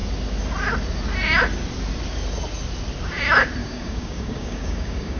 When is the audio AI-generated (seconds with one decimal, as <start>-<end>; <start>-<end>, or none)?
3.6-5.2